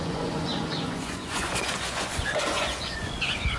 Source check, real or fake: fake